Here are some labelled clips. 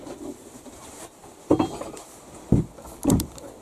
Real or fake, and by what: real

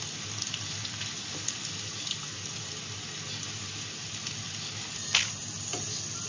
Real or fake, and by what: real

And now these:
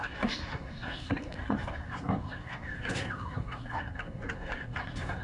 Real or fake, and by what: fake, codec, SNAC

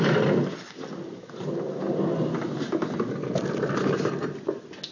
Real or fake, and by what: real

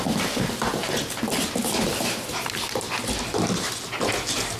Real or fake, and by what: real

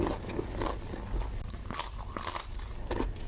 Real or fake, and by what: real